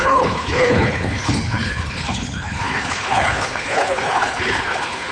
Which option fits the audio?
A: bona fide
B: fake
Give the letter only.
B